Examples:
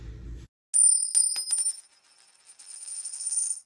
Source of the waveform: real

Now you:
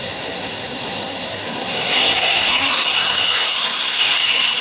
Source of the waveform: fake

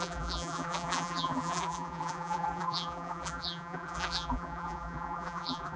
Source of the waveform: fake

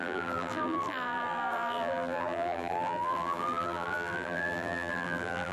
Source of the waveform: fake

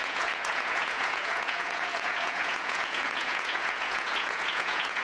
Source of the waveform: fake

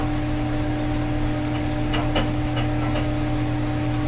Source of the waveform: real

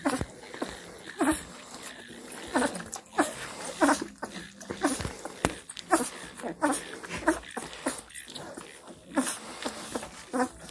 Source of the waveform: real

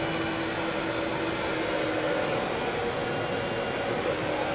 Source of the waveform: real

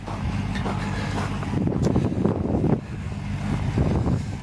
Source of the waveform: real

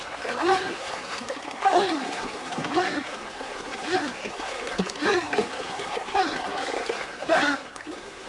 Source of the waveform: fake